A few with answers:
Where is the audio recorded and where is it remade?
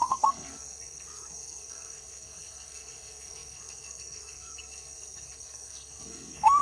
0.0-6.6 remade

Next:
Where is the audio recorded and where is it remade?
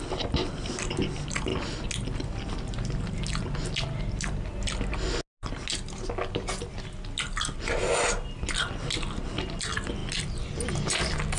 0.0-11.4 recorded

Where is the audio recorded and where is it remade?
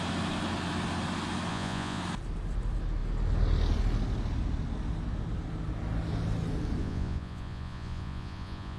0.0-1.5 recorded; 1.5-2.0 remade; 2.0-6.8 recorded; 6.8-8.8 remade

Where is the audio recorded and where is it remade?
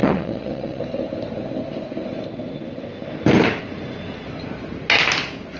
0.0-0.8 remade; 0.8-5.6 recorded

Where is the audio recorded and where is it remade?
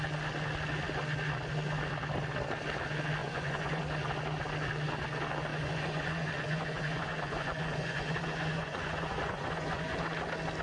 0.0-3.2 recorded; 3.2-3.8 remade; 3.8-5.5 recorded; 5.5-10.0 remade; 10.0-10.6 recorded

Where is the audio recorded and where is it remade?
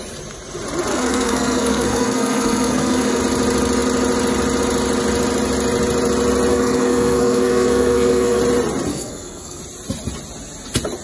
0.0-0.9 recorded; 0.9-3.2 remade; 3.2-6.5 recorded; 6.5-8.4 remade; 8.4-8.9 recorded; 8.9-9.6 remade; 9.6-11.0 recorded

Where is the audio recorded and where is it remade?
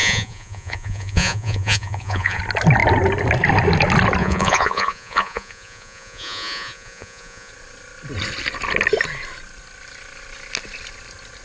0.0-2.4 remade; 2.4-4.2 recorded; 4.2-7.5 remade; 7.5-11.4 recorded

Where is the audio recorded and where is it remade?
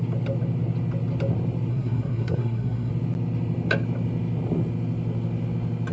0.0-1.7 recorded; 1.7-2.9 remade; 2.9-5.9 recorded